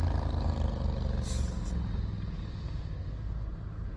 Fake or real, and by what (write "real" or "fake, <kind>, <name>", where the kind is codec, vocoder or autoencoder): real